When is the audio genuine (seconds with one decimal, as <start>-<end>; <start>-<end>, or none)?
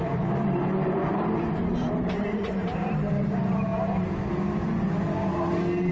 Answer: 3.7-5.9